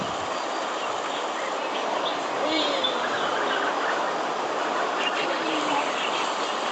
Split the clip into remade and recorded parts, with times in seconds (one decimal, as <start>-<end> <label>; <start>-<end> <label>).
0.0-2.1 recorded; 2.1-6.1 remade; 6.1-6.7 recorded